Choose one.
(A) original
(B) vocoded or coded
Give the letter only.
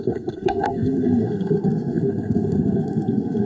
B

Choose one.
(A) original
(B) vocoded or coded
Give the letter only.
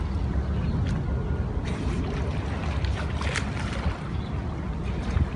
A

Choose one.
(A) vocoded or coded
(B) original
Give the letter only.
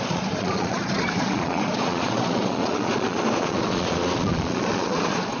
A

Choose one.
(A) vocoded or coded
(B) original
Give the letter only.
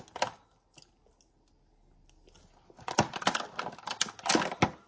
B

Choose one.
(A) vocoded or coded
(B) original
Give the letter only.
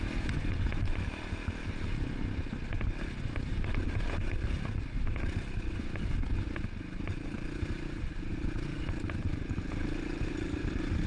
B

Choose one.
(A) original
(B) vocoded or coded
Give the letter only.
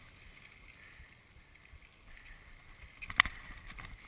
A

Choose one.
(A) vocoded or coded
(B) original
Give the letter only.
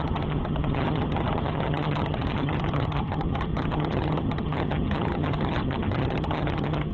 A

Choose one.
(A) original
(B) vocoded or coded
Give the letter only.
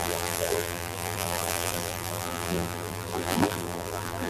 B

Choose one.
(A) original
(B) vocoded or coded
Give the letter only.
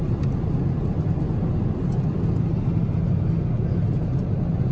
A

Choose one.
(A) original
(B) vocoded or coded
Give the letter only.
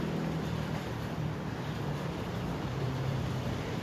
B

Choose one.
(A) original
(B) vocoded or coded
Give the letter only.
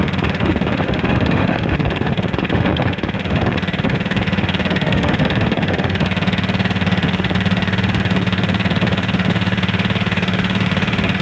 B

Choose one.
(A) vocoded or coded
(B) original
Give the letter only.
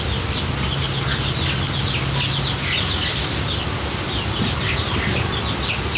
B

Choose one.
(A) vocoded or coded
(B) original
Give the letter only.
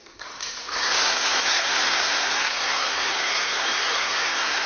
A